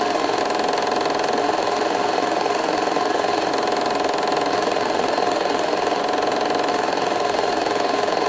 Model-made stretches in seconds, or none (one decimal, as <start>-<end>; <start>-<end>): 0.0-0.4; 1.4-3.5; 4.5-6.0; 6.7-8.3